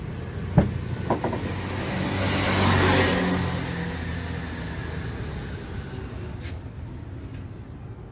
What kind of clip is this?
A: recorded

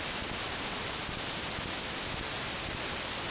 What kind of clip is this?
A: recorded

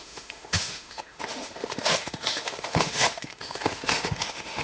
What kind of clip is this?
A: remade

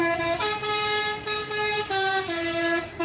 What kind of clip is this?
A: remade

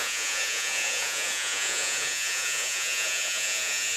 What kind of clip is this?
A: remade